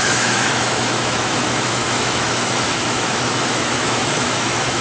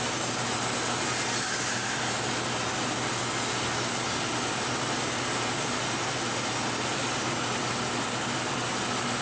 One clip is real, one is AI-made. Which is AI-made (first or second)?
first